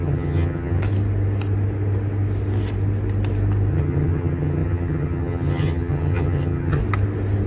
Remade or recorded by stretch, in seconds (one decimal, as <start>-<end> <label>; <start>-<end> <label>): 0.0-0.8 remade; 0.8-3.7 recorded; 3.7-6.8 remade; 6.8-7.5 recorded